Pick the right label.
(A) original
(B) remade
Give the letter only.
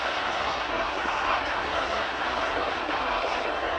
B